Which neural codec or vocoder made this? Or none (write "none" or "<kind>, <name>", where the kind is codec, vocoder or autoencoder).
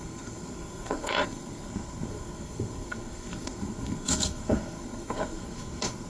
codec, SNAC